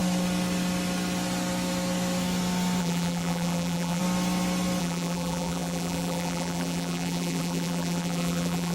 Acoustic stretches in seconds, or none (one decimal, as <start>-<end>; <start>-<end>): 0.0-2.8; 4.0-4.8